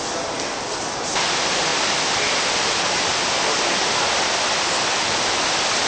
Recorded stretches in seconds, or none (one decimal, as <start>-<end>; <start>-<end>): 0.0-5.9